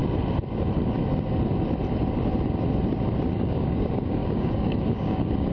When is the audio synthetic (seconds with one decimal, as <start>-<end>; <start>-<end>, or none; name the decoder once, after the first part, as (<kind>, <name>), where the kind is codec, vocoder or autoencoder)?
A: 3.3-5.5 (codec, DAC)